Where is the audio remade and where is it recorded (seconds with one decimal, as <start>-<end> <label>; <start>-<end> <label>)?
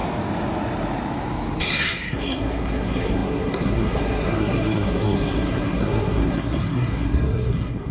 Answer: 0.0-1.6 recorded; 1.6-7.9 remade